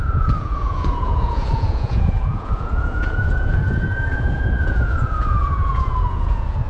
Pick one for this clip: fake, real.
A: fake